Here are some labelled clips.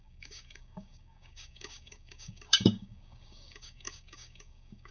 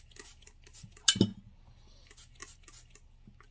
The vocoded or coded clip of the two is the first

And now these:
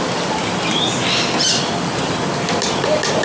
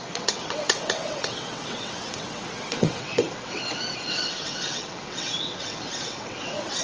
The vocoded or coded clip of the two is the second